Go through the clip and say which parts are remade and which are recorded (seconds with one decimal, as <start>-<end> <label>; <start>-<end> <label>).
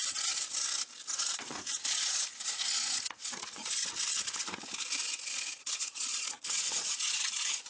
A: 0.0-1.1 recorded; 1.1-3.8 remade; 3.8-5.6 recorded; 5.6-7.7 remade